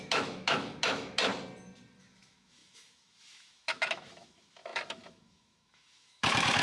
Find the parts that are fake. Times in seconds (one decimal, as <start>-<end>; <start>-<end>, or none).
0.0-1.3; 2.0-6.6